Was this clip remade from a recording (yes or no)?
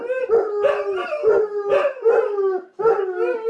no